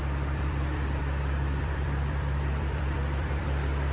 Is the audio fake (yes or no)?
yes